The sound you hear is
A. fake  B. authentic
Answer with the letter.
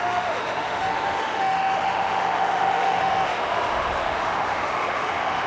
A